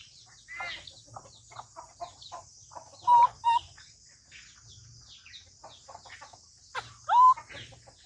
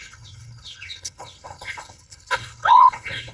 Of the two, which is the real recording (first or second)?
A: first